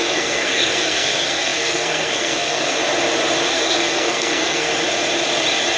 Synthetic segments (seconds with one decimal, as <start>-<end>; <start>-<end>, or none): 0.0-2.8; 3.5-4.7